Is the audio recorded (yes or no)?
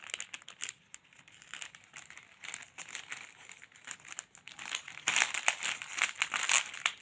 yes